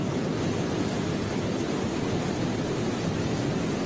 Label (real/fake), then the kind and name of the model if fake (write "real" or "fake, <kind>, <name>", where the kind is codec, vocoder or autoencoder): real